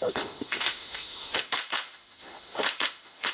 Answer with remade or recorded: remade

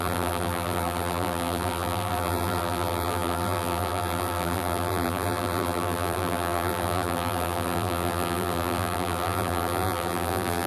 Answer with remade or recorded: remade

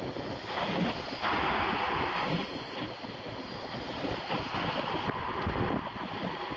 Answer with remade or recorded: recorded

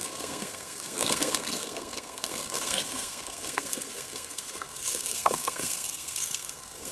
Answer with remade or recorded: remade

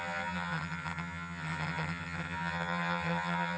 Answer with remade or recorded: remade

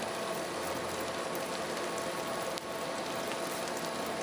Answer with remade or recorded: recorded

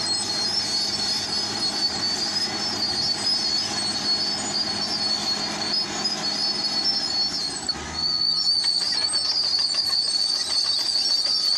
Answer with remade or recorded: recorded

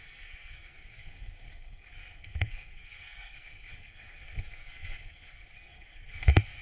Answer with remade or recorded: remade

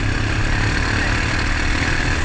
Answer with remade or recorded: recorded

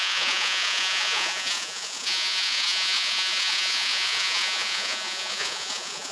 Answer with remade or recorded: remade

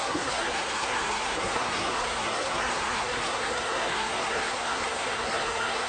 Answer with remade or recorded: remade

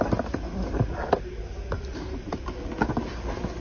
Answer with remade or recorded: recorded